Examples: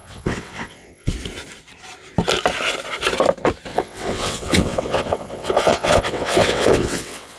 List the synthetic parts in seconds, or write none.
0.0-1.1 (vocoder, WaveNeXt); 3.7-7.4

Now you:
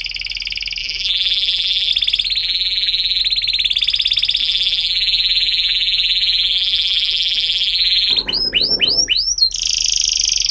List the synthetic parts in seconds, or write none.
0.8-1.9 (vocoder, BigVGAN v2); 2.4-3.2; 4.4-8.1

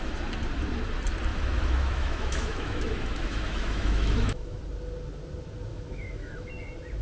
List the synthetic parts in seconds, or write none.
1.3-4.6 (autoencoder, DAC-VAE); 5.7-6.5

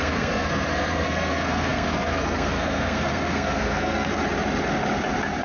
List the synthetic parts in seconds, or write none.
0.0-4.2 (codec, SNAC)